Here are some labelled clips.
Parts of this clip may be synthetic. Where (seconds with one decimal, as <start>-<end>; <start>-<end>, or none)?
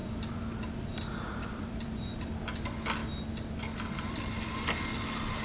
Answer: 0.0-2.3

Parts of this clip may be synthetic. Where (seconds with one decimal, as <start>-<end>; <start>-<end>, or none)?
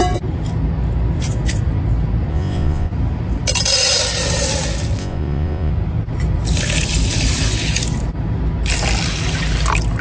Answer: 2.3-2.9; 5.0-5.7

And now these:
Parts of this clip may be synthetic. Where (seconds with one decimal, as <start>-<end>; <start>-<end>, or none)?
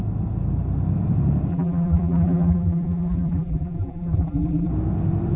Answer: 1.5-4.7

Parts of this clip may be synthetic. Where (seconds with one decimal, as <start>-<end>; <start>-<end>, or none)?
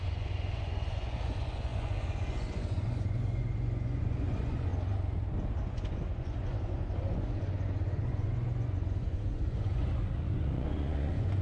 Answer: 0.0-4.7; 5.6-11.4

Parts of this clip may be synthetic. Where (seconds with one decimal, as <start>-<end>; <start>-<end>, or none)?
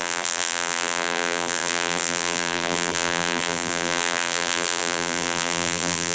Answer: 0.0-6.1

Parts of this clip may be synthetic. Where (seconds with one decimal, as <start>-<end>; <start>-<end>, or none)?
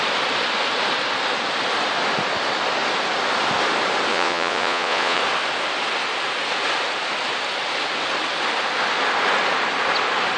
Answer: 4.1-5.2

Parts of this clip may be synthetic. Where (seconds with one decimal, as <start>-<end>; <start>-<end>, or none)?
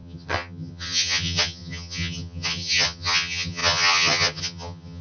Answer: 0.0-5.0